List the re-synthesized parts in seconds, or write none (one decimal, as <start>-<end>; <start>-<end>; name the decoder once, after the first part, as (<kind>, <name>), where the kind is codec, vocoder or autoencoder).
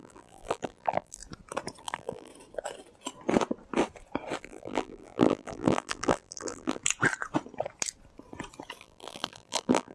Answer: 0.0-1.2 (vocoder, BigVGAN v2); 1.8-2.3; 4.4-6.8; 8.8-9.9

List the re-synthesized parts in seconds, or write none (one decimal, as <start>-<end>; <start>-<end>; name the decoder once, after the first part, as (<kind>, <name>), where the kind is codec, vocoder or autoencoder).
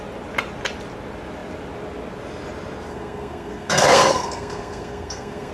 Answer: 2.9-5.5 (codec, SNAC)